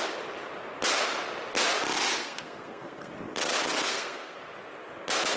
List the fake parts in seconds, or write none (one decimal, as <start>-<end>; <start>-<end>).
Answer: 2.2-3.1; 3.9-4.4